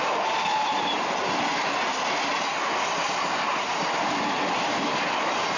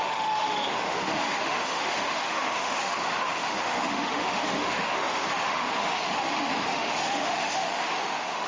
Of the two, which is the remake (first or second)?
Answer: second